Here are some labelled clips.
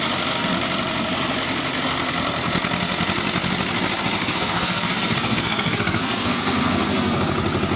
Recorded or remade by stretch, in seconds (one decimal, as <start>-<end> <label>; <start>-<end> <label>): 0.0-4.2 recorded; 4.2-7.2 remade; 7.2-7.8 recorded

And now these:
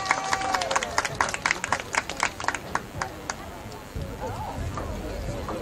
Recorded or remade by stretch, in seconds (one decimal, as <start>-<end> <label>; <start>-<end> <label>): 0.0-5.6 recorded

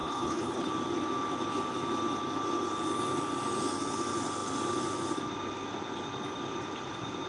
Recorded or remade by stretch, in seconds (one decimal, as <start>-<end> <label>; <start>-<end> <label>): 0.0-0.7 remade; 0.7-7.3 recorded

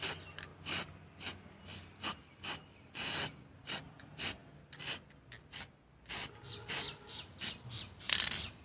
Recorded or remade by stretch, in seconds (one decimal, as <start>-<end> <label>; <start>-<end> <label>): 0.0-8.6 recorded

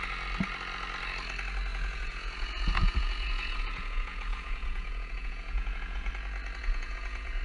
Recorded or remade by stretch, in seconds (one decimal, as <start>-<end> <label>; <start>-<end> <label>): 0.0-1.7 recorded; 1.7-6.1 remade; 6.1-6.6 recorded; 6.6-7.4 remade